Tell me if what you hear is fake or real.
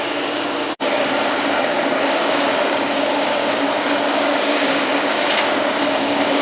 fake